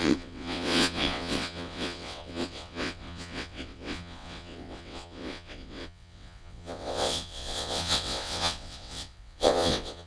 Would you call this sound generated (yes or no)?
yes